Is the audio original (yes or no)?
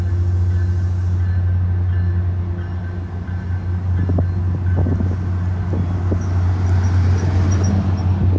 yes